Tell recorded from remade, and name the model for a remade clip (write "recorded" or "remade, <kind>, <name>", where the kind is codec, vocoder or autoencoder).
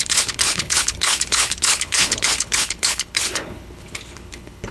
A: remade, codec, HILCodec